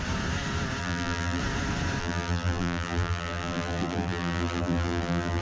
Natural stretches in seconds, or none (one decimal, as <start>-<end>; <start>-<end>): 0.0-0.8; 1.4-2.0